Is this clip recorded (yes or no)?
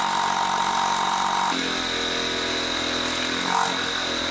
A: yes